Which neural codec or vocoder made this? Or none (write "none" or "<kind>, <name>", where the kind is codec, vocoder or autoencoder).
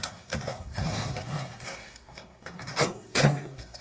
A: codec, SNAC